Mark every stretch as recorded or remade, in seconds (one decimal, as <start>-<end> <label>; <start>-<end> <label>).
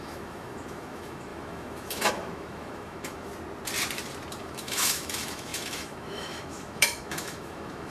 0.0-3.3 remade; 3.3-4.4 recorded; 4.4-7.9 remade